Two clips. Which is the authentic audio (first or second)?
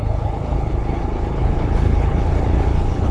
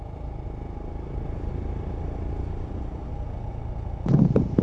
second